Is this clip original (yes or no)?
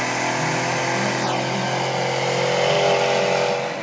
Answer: yes